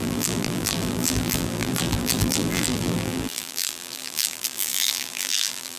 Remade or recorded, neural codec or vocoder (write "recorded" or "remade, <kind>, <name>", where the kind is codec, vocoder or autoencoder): remade, vocoder, BigVGAN v2